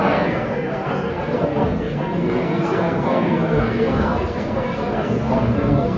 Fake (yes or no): yes